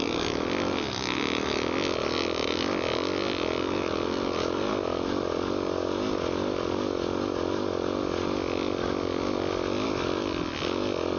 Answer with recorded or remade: recorded